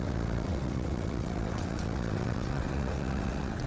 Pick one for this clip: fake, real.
fake